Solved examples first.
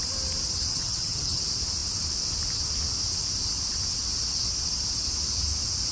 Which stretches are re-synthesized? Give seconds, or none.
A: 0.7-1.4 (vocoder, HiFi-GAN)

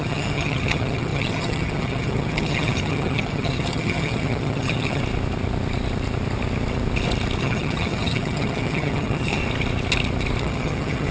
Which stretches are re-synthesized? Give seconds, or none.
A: 0.0-5.0 (vocoder, HiFi-GAN); 7.4-9.4; 10.4-11.1

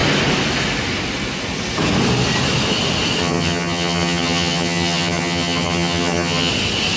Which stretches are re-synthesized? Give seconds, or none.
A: 3.2-6.5 (vocoder, HiFi-GAN)

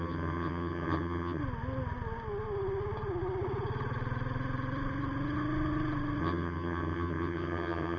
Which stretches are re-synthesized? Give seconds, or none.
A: 0.0-1.4 (vocoder, HiFi-GAN); 6.2-8.0

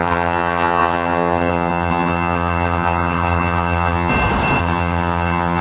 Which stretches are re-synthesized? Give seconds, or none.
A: 0.0-4.1 (vocoder, HiFi-GAN); 4.6-5.6

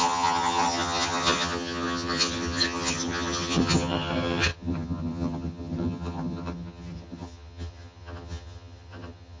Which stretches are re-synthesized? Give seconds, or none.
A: 0.0-9.4 (vocoder, HiFi-GAN)

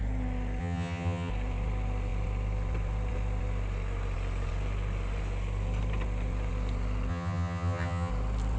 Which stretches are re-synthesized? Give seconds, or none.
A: 0.6-1.3 (vocoder, HiFi-GAN); 7.1-8.1

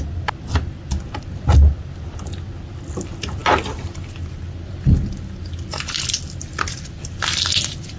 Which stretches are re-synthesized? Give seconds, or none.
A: none